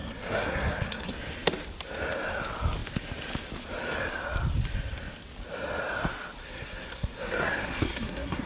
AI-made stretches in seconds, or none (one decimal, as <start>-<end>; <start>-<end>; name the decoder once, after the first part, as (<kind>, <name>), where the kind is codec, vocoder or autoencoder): 0.0-1.1 (codec, SNAC); 6.4-8.5